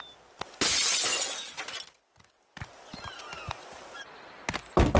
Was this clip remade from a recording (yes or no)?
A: no